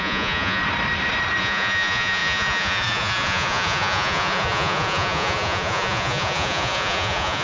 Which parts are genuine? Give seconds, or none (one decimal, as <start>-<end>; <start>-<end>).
0.6-1.4